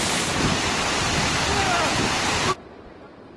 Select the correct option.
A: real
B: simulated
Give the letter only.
A